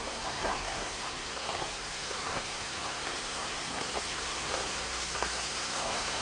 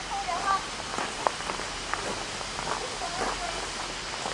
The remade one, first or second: first